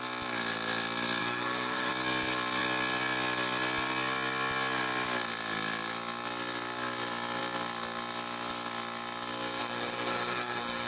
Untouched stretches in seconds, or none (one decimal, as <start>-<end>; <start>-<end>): 0.0-1.2; 1.9-9.6